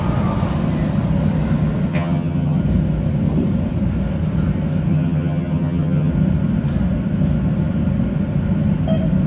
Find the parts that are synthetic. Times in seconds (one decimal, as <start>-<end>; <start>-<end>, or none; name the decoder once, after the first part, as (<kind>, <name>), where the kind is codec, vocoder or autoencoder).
1.9-2.6 (vocoder, HiFi-GAN); 4.9-6.1